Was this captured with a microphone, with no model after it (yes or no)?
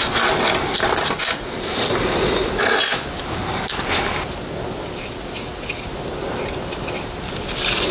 yes